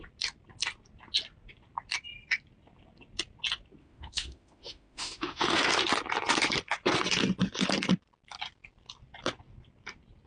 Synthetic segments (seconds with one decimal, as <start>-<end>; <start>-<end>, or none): 3.8-5.7